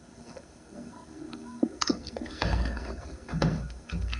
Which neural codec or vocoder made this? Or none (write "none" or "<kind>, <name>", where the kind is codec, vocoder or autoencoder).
codec, SNAC